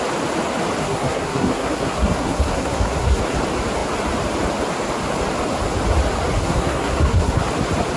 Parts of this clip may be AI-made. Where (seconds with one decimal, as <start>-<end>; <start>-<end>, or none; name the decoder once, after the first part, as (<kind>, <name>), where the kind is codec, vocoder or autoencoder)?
0.8-3.2 (codec, SNAC); 6.4-7.4